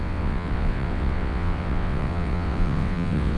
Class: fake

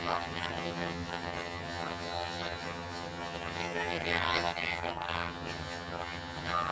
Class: fake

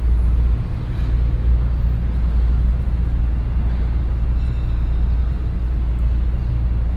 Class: real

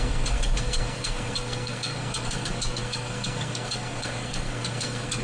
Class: fake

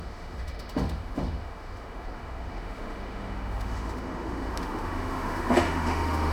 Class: fake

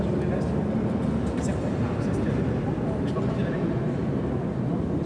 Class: real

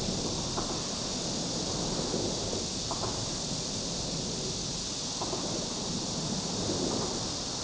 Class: real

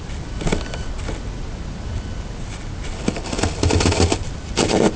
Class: real